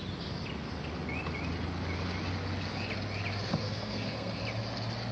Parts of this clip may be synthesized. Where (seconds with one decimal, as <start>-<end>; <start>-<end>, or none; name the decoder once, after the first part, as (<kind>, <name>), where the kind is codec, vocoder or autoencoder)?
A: 3.5-4.4 (codec, SNAC)